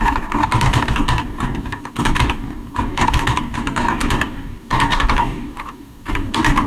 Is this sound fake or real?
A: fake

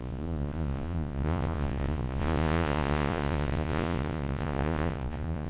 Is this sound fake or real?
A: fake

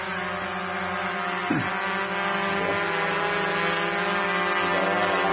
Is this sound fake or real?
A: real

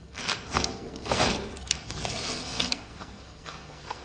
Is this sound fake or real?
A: fake